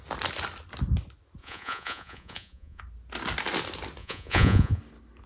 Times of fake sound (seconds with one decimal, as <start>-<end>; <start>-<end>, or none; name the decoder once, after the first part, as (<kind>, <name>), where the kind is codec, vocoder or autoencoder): 1.4-2.8 (vocoder, Vocos); 4.0-4.8